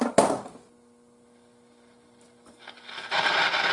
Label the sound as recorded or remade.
recorded